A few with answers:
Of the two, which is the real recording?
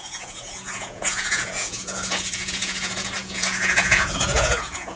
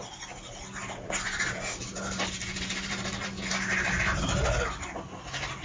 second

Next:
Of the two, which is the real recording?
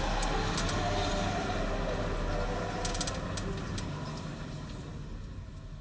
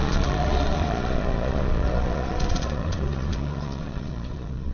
first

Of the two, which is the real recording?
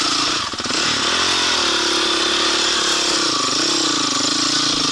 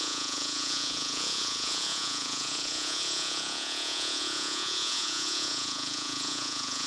first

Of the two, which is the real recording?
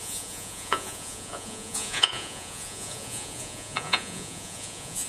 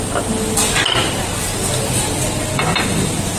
second